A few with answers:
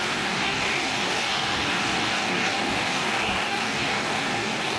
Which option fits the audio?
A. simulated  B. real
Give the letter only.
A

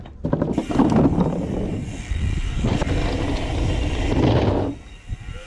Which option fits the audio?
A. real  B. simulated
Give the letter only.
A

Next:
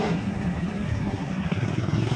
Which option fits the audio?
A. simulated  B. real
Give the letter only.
A